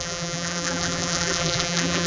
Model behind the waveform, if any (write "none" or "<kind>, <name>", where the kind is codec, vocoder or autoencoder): vocoder, BigVGAN v2